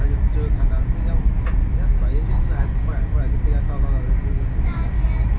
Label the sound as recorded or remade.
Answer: recorded